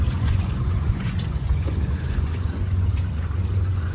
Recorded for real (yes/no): no